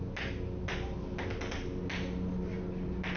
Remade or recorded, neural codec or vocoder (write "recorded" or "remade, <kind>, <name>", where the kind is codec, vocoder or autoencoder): recorded